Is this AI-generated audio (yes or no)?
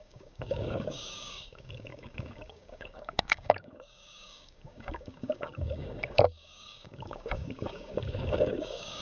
yes